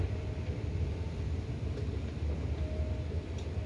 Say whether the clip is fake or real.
real